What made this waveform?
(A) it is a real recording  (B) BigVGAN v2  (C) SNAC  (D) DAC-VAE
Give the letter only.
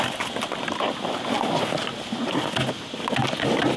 A